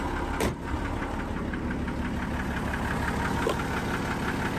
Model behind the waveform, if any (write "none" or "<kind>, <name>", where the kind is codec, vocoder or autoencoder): none